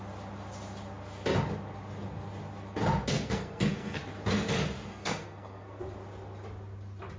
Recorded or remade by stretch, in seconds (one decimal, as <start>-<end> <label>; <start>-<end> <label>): 0.0-3.1 recorded; 3.1-4.0 remade; 4.0-4.9 recorded; 4.9-5.8 remade; 5.8-7.2 recorded